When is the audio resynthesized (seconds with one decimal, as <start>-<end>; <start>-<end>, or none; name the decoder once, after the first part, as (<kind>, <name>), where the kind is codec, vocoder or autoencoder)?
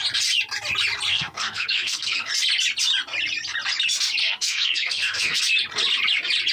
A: 1.1-2.3 (codec, SNAC); 4.2-5.4